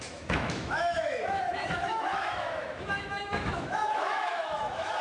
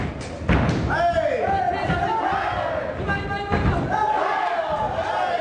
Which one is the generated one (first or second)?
first